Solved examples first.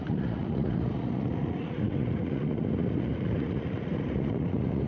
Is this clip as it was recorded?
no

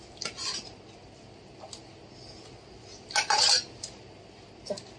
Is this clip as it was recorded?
yes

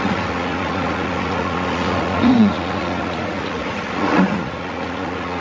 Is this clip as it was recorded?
no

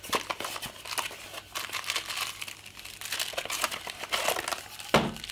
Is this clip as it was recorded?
yes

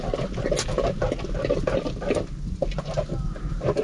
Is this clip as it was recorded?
yes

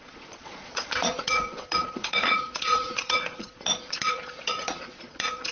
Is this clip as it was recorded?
no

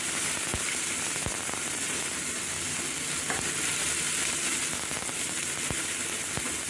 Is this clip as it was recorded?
yes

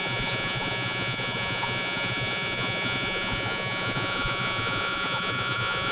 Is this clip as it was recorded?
no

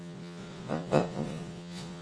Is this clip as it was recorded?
no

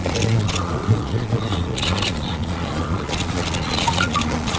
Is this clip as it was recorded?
no